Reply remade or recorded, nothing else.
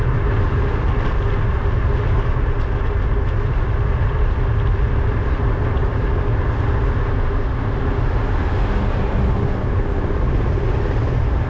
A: recorded